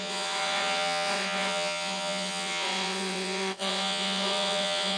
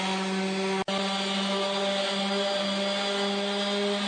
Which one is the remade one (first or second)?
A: first